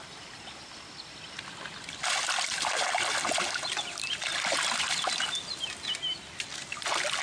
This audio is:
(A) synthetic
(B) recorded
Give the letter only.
B